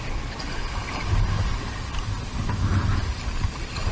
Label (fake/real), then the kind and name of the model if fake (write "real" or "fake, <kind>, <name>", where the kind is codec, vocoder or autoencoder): real